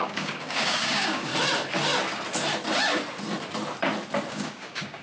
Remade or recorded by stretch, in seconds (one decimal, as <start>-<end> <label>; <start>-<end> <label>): 0.0-1.3 remade; 1.3-4.3 recorded; 4.3-5.0 remade